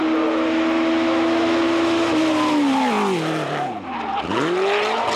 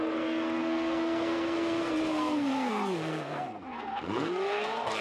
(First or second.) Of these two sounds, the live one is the first